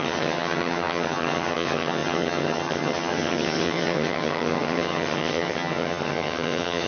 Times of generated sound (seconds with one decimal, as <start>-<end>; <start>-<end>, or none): 0.0-6.9